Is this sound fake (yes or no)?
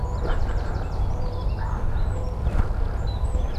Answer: no